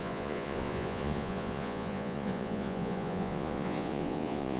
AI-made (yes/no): yes